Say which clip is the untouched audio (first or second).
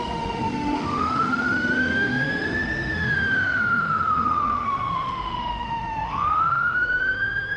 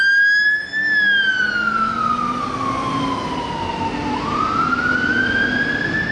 second